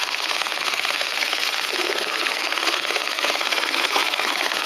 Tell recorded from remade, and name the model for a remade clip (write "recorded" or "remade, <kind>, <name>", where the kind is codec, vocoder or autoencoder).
remade, codec, SNAC